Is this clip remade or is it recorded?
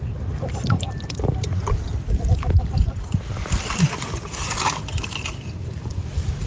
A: recorded